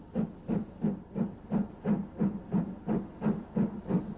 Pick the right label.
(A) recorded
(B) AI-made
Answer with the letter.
A